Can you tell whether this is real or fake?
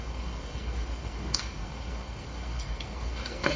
fake